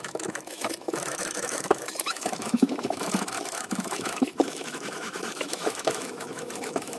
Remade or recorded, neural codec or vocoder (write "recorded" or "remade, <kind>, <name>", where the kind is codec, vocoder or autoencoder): remade, autoencoder, DAC-VAE